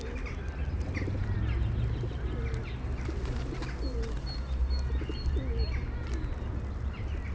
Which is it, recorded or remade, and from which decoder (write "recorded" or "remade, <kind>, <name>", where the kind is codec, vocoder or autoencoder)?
recorded